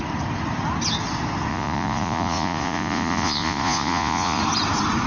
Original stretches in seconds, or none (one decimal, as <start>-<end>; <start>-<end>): 0.0-1.5; 4.4-5.1